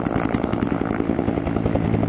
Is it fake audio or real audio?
real